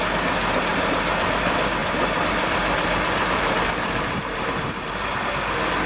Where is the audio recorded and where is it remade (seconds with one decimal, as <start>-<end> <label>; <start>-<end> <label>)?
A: 0.0-0.7 recorded; 0.7-1.4 remade; 1.4-1.8 recorded; 1.8-5.3 remade; 5.3-5.9 recorded